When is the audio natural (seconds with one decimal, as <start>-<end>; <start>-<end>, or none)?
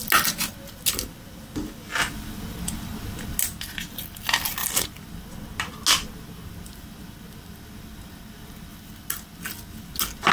0.0-10.3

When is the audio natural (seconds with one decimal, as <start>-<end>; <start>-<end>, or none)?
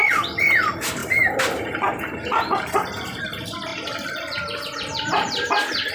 0.0-1.0; 3.2-3.7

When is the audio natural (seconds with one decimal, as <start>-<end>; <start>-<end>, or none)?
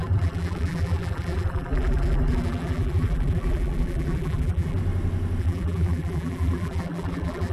4.8-5.4